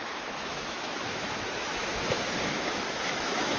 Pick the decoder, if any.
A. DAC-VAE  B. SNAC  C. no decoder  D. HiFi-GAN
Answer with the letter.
A